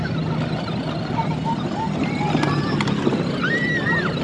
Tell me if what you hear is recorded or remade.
recorded